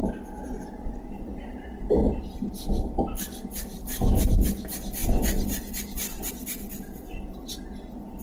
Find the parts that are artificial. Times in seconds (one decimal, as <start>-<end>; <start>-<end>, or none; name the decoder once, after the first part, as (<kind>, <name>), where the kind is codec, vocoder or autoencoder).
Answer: 0.0-2.3 (vocoder, BigVGAN v2)